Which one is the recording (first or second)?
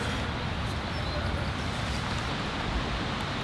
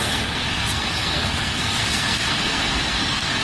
first